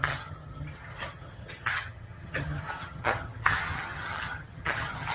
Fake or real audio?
fake